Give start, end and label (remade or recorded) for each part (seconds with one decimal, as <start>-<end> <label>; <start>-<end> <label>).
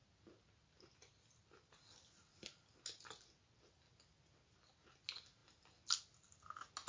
0.0-6.9 recorded